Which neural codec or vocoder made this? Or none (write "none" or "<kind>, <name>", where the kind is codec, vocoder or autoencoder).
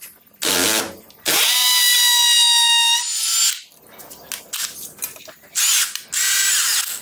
none